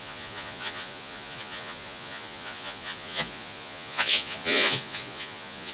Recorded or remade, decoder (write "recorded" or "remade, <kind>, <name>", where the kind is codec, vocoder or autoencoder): remade, vocoder, Vocos